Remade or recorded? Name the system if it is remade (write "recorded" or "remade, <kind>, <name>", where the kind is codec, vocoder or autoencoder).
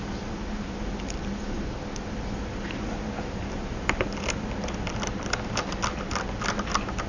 recorded